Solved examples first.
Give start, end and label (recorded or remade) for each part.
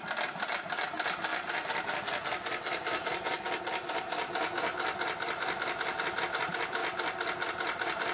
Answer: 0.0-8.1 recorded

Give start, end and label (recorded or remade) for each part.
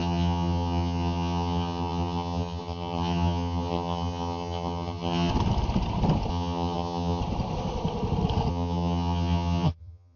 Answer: 0.0-5.3 remade; 5.3-6.3 recorded; 6.3-7.2 remade; 7.2-8.5 recorded; 8.5-10.2 remade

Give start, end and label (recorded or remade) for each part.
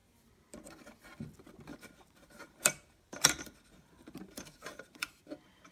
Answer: 0.0-1.7 recorded; 1.7-5.1 remade; 5.1-5.7 recorded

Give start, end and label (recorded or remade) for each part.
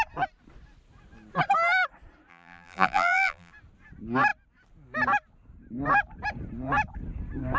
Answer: 0.0-2.3 recorded; 2.3-3.5 remade; 3.5-7.6 recorded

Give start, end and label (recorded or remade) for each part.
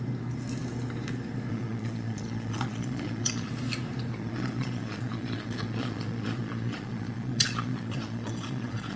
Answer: 0.0-1.5 recorded; 1.5-3.5 remade; 3.5-4.1 recorded; 4.1-9.0 remade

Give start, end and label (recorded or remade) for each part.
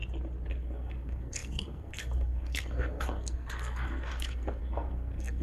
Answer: 0.0-0.5 recorded; 0.5-5.4 remade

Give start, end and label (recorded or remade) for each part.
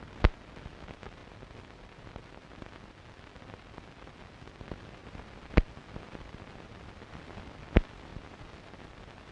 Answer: 0.0-9.3 recorded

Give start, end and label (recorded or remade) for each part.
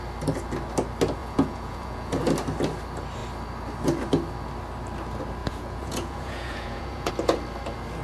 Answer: 0.0-1.2 recorded; 1.2-2.2 remade; 2.2-5.4 recorded; 5.4-7.1 remade; 7.1-8.0 recorded